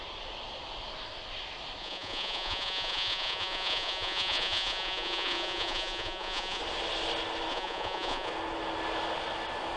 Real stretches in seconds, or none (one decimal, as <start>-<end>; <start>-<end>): 0.0-1.8; 6.6-7.5; 8.3-9.8